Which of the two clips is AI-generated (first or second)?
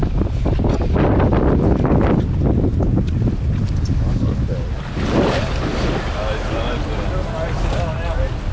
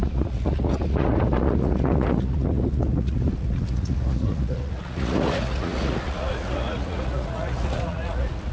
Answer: second